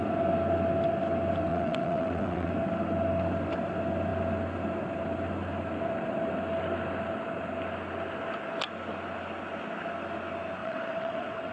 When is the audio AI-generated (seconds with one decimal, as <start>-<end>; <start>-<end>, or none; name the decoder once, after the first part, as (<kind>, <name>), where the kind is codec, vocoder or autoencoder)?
1.5-2.5 (vocoder, WaveNeXt); 10.6-11.5